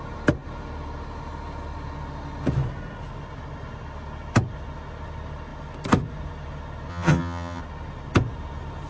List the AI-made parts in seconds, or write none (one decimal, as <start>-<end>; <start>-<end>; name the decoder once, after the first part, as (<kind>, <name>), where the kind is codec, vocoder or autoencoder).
6.9-7.6 (vocoder, HiFi-GAN)